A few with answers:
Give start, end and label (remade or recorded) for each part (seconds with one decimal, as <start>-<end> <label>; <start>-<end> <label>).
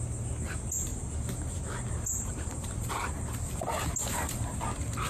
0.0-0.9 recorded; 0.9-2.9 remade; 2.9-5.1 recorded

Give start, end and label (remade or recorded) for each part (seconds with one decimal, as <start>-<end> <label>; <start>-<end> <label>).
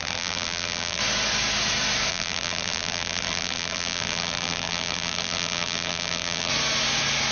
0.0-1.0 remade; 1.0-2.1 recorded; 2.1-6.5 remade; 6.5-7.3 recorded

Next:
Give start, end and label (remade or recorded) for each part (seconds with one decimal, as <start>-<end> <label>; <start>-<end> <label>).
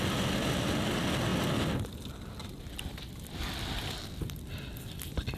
0.0-5.4 recorded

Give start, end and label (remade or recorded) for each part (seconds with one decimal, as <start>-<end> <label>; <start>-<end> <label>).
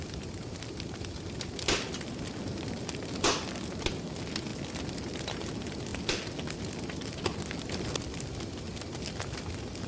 0.0-9.9 recorded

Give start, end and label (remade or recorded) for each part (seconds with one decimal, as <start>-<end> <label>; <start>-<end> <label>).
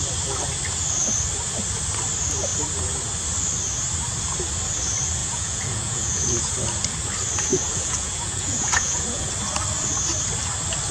0.0-5.2 recorded; 5.2-6.4 remade; 6.4-7.5 recorded; 7.5-9.3 remade; 9.3-10.9 recorded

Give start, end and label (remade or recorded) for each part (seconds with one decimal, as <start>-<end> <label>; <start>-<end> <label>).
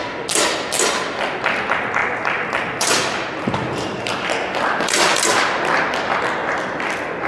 0.0-2.0 recorded; 2.0-4.0 remade; 4.0-5.1 recorded; 5.1-5.7 remade; 5.7-7.3 recorded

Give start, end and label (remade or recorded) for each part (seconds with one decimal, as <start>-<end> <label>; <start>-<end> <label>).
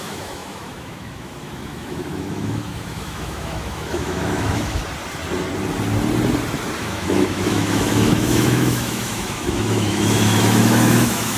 0.0-4.8 remade; 4.8-6.8 recorded; 6.8-11.4 remade